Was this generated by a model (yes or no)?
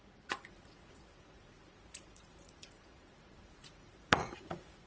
yes